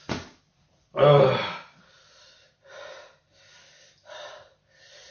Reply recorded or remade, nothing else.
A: recorded